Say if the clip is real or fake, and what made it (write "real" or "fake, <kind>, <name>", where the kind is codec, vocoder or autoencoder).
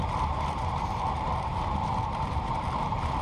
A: fake, vocoder, BigVGAN v2